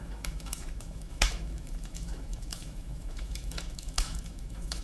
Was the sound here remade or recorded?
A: remade